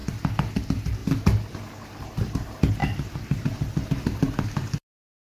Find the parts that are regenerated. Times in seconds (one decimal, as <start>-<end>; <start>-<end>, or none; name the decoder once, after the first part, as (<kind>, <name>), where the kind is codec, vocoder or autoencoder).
0.6-1.0 (vocoder, BigVGAN v2); 2.2-5.4